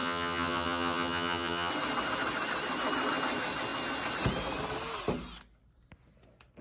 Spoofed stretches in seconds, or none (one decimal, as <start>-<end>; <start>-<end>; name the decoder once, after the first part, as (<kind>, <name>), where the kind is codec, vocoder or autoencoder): 0.0-1.7 (vocoder, HiFi-GAN)